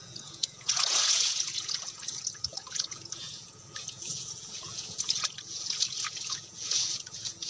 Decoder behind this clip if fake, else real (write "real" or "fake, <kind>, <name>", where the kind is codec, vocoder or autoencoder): fake, vocoder, Vocos